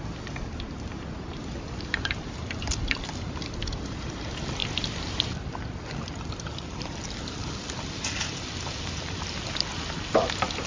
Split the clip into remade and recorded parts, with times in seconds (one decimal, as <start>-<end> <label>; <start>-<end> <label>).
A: 0.0-10.7 recorded

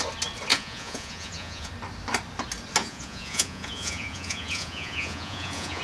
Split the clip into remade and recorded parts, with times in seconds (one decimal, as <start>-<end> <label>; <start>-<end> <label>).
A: 0.0-0.5 recorded; 0.5-1.7 remade; 1.7-2.8 recorded; 2.8-5.8 remade

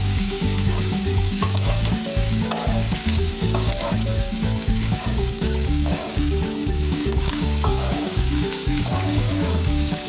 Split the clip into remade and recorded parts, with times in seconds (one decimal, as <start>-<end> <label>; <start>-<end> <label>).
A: 0.0-10.1 remade

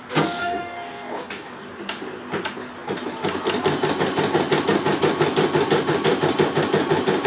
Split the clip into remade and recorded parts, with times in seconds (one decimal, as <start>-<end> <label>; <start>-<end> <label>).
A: 0.0-0.4 recorded; 0.4-1.5 remade; 1.5-7.3 recorded

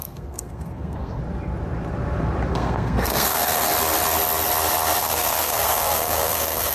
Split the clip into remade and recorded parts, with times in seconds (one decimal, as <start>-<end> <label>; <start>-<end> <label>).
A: 0.0-1.2 remade; 1.2-2.5 recorded; 2.5-3.7 remade; 3.7-5.0 recorded; 5.0-6.7 remade